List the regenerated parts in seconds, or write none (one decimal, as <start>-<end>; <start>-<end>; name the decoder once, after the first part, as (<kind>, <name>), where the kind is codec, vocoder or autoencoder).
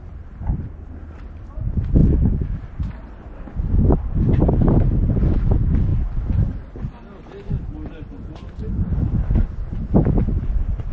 none